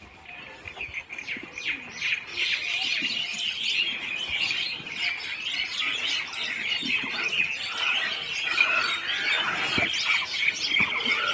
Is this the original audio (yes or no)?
yes